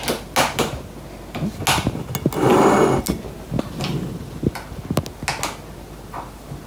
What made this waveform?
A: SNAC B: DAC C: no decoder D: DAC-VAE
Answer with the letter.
C